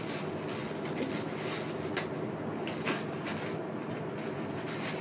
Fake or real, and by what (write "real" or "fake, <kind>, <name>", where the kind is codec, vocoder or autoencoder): real